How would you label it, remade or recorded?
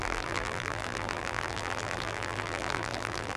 remade